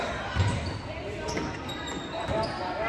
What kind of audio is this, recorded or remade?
recorded